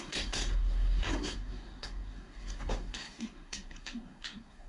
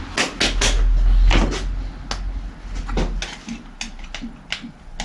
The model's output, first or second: first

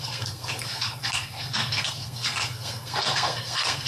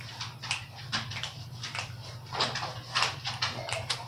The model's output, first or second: first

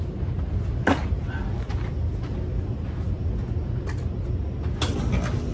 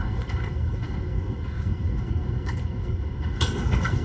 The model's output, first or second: second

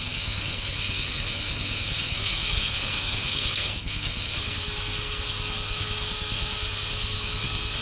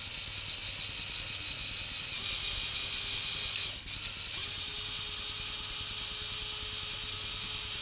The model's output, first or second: first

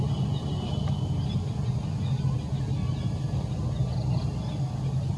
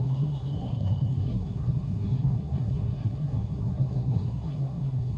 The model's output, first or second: second